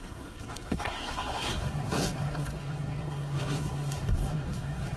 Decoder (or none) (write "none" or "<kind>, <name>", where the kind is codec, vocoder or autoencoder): codec, SNAC